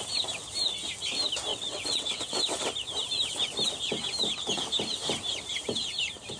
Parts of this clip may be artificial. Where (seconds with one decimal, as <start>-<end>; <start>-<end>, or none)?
1.5-2.2